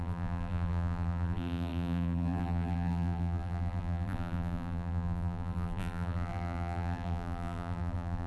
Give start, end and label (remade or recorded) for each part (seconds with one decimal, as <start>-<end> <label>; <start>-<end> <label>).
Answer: 0.0-8.3 remade